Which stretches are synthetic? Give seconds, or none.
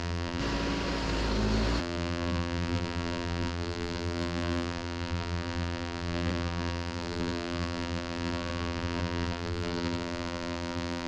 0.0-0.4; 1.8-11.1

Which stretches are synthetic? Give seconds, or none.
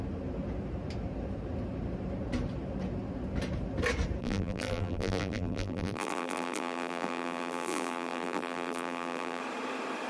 4.2-9.4